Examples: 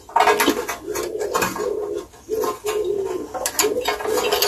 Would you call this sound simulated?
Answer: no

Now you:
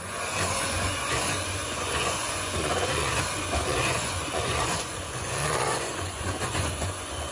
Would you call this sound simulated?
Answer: yes